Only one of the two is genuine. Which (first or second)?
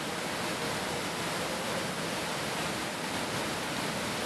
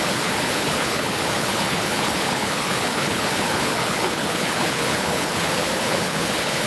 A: first